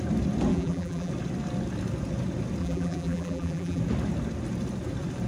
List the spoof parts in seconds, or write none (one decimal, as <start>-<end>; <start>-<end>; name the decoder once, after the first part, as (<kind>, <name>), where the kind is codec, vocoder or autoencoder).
0.5-1.1 (vocoder, BigVGAN v2); 2.6-3.8